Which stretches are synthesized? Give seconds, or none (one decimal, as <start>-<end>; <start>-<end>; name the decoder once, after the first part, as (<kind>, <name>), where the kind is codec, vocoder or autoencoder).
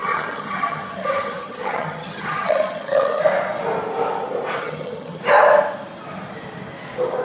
0.0-3.2 (vocoder, HiFi-GAN); 4.6-5.2